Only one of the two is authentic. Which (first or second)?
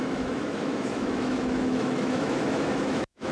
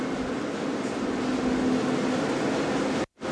second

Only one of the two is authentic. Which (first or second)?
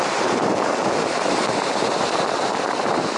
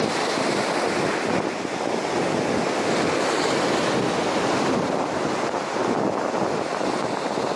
second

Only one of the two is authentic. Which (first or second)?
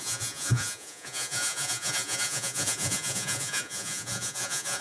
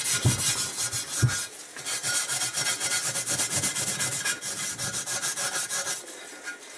second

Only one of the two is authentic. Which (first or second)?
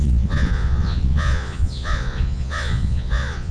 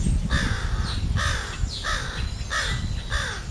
second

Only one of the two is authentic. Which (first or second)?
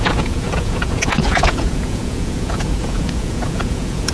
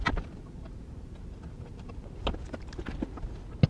second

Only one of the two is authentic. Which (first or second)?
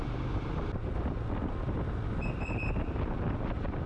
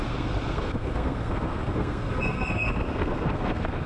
first